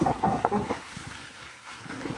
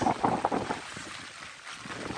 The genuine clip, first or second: second